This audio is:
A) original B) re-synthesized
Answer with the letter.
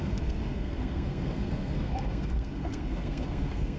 B